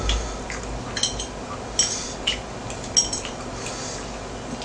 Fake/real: real